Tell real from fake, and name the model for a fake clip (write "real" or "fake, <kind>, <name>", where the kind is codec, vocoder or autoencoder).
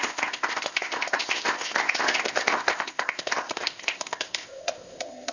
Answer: fake, codec, ZipCodec